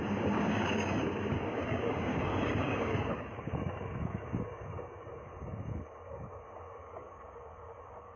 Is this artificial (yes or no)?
yes